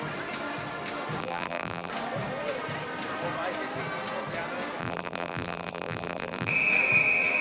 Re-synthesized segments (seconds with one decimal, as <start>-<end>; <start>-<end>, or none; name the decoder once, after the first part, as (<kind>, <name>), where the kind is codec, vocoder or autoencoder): 1.2-1.9 (vocoder, BigVGAN v2); 4.8-6.5